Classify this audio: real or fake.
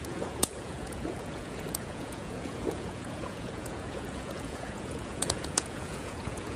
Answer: fake